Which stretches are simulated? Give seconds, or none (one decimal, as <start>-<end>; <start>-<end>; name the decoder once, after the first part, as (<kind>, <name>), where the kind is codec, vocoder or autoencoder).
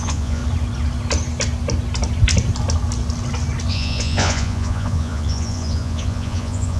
0.0-0.4 (vocoder, Vocos); 3.7-6.8